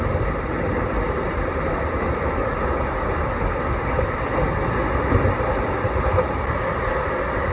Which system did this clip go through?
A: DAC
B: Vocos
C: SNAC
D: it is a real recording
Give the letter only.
D